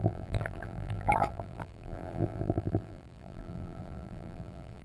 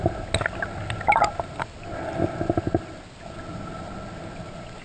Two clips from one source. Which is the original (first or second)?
second